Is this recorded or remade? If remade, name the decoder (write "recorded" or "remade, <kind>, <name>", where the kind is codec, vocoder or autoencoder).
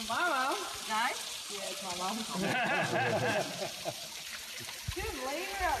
recorded